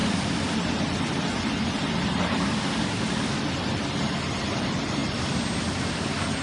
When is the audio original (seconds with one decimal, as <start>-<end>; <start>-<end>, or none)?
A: 0.0-6.4